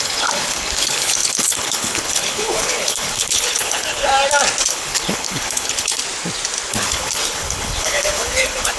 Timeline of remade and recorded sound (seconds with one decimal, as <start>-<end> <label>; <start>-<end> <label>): 0.0-4.1 remade; 4.1-4.7 recorded; 4.7-6.0 remade; 6.0-6.7 recorded; 6.7-8.8 remade